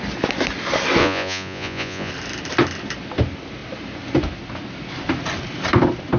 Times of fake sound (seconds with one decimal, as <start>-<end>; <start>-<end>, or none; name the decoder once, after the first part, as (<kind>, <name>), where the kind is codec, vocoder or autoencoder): 1.0-2.1 (vocoder, Vocos)